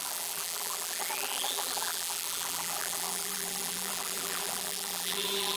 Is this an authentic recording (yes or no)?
no